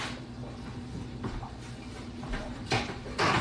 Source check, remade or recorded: recorded